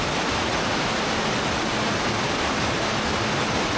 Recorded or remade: recorded